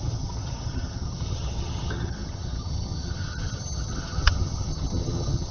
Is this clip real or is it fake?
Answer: fake